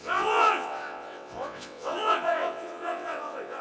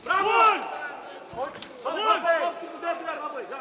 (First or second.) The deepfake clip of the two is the first